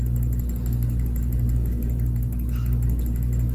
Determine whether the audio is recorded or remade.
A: recorded